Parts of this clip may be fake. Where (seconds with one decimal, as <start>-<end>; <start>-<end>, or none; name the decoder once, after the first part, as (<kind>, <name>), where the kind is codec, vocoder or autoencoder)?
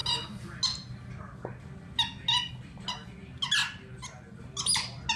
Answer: none